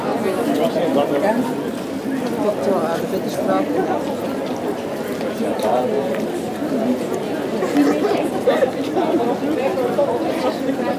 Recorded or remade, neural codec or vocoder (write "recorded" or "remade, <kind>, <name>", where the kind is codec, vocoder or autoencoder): recorded